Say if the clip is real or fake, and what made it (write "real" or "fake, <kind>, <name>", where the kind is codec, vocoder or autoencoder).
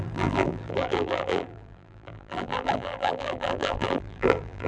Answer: fake, vocoder, BigVGAN v2